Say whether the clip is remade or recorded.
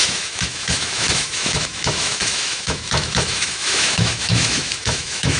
remade